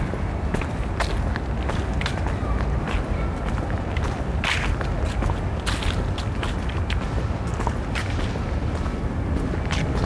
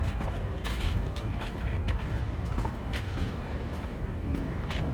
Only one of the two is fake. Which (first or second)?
second